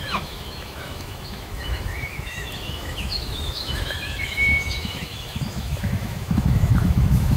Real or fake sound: fake